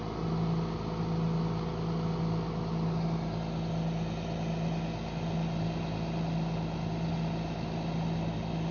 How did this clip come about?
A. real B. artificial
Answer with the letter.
A